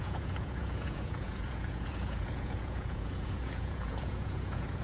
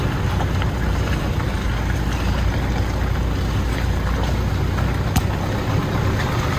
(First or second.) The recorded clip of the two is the second